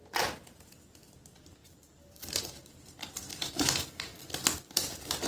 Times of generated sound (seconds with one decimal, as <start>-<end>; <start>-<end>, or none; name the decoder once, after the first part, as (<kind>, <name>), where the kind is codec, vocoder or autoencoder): 1.6-2.4 (vocoder, BigVGAN v2)